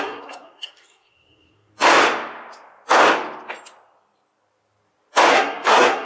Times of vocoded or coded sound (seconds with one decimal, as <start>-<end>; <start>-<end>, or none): 0.0-1.7; 5.3-6.0